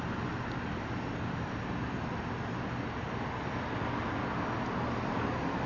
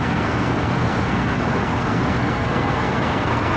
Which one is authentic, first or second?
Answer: first